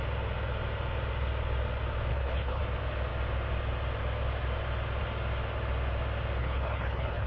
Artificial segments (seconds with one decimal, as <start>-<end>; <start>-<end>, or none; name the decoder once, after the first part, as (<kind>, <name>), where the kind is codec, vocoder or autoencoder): 2.1-2.6 (codec, HILCodec); 6.4-7.3